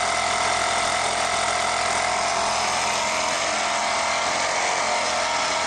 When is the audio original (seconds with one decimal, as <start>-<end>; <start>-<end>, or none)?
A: 0.0-5.7